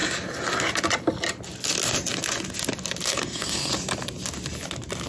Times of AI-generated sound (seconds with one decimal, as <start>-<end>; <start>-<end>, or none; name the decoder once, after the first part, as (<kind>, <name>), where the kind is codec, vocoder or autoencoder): 3.1-3.7 (codec, SNAC)